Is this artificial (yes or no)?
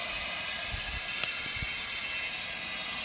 no